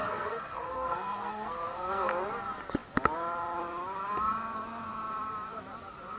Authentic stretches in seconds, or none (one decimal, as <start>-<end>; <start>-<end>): 2.1-6.2